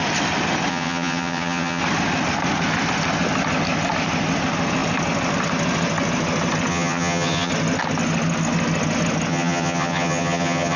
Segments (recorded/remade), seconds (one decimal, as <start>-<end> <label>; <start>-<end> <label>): 0.0-0.7 recorded; 0.7-1.8 remade; 1.8-6.7 recorded; 6.7-7.5 remade; 7.5-9.3 recorded; 9.3-10.8 remade

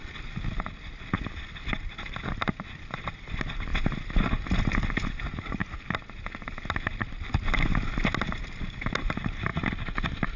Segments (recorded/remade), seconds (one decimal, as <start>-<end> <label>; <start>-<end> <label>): 0.0-10.4 recorded